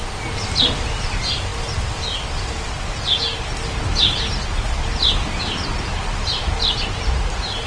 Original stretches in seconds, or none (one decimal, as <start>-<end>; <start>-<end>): 0.0-7.7